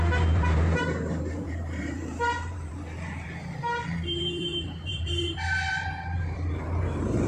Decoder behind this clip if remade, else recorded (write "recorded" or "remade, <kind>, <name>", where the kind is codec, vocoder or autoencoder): remade, vocoder, BigVGAN v2